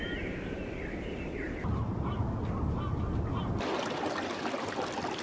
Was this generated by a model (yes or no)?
no